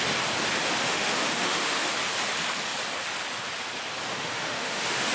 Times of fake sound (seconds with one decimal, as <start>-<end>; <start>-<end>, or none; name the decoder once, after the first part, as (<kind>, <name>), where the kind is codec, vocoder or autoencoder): 0.8-1.9 (autoencoder, DAC-VAE); 4.1-5.1